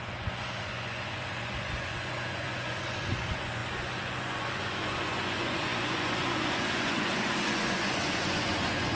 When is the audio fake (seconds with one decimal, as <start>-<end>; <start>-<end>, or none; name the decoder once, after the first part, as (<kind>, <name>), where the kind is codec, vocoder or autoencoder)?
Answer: 0.0-9.0 (vocoder, Vocos)

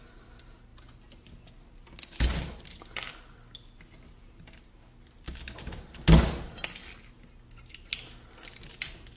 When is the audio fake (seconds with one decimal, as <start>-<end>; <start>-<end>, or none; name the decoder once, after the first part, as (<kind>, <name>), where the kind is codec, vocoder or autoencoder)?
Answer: none

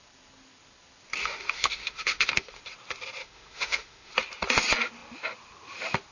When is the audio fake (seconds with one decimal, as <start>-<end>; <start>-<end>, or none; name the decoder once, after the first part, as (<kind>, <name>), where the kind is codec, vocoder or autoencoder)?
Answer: 1.2-2.6 (autoencoder, DAC-VAE); 3.2-4.1